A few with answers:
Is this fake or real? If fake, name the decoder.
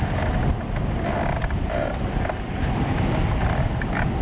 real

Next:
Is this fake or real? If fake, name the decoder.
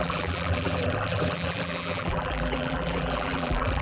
fake, vocoder, BigVGAN v2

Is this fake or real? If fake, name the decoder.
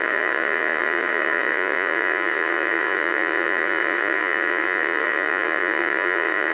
fake, vocoder, Vocos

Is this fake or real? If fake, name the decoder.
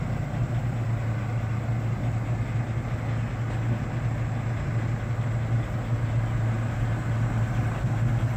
real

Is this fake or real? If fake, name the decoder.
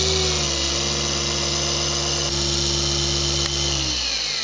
real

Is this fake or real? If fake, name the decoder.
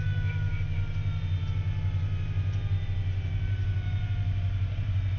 real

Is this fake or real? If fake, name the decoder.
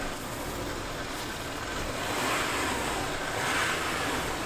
real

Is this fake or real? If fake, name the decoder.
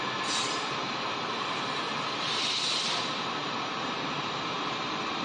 fake, vocoder, BigVGAN v2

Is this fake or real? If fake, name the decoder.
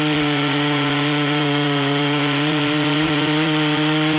fake, vocoder, Vocos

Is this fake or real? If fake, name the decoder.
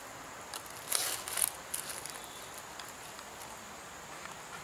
real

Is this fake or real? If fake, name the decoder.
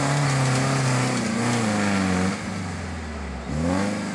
real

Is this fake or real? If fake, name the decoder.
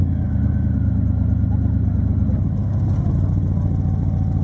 real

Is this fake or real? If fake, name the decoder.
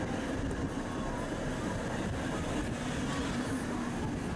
real